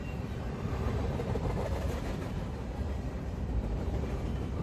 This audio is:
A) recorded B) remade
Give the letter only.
B